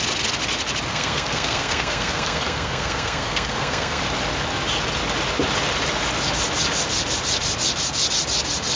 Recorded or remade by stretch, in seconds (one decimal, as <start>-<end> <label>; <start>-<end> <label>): 0.0-0.9 recorded; 0.9-4.0 remade; 4.0-8.8 recorded